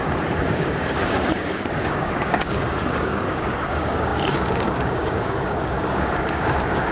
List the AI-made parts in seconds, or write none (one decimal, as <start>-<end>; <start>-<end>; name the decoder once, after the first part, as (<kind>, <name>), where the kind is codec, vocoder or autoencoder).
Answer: 0.0-6.9 (codec, DAC)